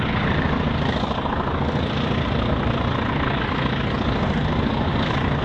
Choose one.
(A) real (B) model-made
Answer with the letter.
A